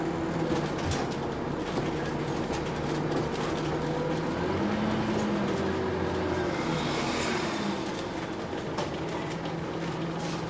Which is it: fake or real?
real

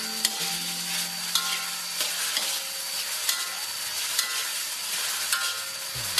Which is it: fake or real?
real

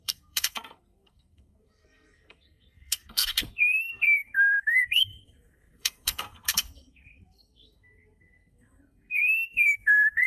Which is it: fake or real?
fake